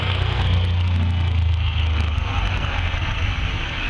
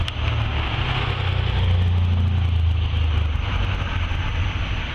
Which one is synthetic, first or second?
first